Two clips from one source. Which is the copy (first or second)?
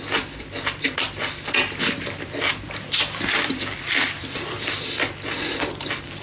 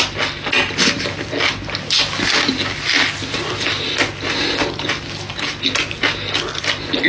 first